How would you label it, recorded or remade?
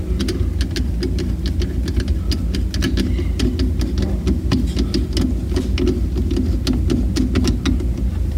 recorded